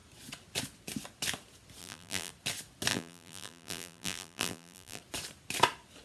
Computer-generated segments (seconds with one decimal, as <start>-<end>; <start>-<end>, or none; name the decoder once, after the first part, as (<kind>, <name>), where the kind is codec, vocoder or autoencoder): 1.8-2.3 (vocoder, BigVGAN v2); 2.9-5.0